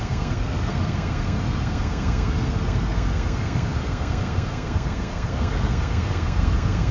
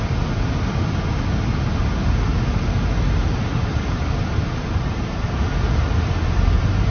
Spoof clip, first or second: first